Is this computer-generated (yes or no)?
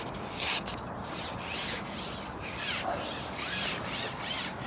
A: no